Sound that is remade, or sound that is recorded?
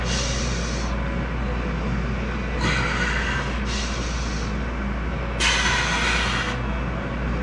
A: recorded